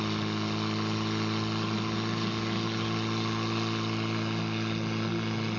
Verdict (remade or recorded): recorded